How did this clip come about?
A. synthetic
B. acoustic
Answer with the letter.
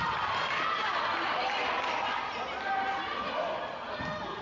B